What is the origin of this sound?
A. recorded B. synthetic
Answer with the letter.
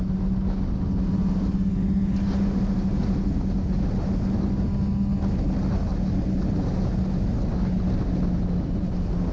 A